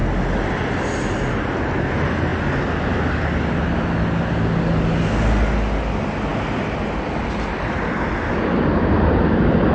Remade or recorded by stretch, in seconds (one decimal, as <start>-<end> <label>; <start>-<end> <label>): 0.0-9.7 recorded